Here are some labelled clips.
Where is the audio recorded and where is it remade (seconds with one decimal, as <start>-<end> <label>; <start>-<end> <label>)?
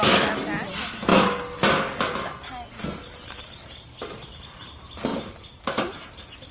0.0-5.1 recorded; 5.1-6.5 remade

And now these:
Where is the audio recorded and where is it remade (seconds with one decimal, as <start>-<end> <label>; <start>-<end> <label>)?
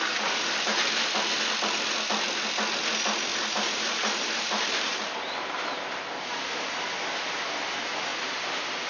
0.0-3.3 recorded; 3.3-6.7 remade; 6.7-8.9 recorded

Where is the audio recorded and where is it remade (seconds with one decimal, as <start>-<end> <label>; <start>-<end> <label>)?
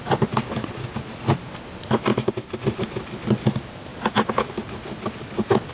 0.0-5.7 recorded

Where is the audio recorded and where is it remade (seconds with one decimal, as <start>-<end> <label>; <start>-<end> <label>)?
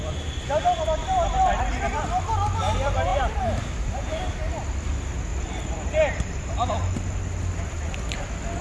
0.0-1.0 recorded; 1.0-1.6 remade; 1.6-3.1 recorded; 3.1-4.2 remade; 4.2-5.3 recorded; 5.3-6.7 remade; 6.7-8.6 recorded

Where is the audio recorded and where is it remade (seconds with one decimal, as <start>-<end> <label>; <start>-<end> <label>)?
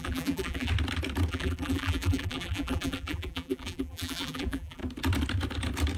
0.0-0.7 remade; 0.7-1.3 recorded; 1.3-4.8 remade; 4.8-6.0 recorded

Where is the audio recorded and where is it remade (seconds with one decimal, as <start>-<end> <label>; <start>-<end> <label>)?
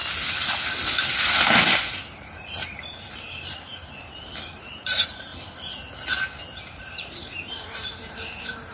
0.0-2.0 recorded; 2.0-5.3 remade; 5.3-6.6 recorded; 6.6-8.7 remade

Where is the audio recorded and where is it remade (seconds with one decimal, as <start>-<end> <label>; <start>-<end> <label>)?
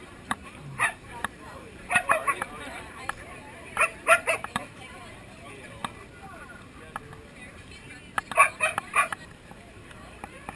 0.0-5.8 remade; 5.8-7.5 recorded; 7.5-7.9 remade; 7.9-8.6 recorded; 8.6-10.6 remade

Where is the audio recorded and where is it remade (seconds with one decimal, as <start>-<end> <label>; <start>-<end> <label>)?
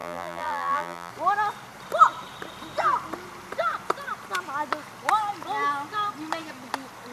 0.0-1.1 remade; 1.1-7.1 recorded